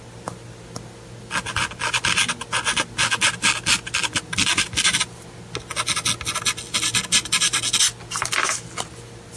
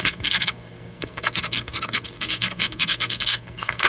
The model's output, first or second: second